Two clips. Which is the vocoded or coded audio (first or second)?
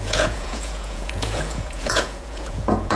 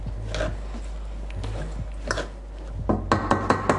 first